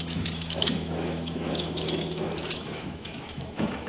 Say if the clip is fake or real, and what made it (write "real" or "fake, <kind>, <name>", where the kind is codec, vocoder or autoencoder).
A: fake, autoencoder, DAC-VAE